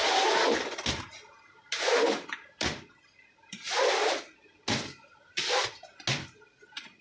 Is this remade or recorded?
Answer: recorded